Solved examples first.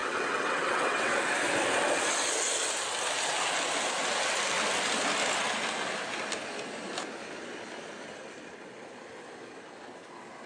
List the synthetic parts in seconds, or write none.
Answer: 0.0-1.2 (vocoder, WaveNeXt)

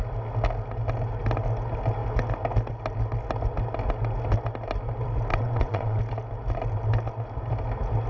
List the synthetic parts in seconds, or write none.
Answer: 5.3-6.0 (vocoder, WaveNeXt)

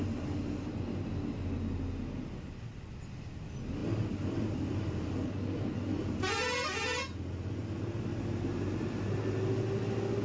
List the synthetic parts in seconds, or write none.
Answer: none

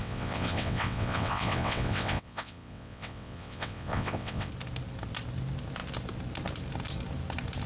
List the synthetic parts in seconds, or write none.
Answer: 0.0-4.5 (vocoder, WaveNeXt)